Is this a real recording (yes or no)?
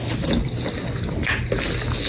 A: yes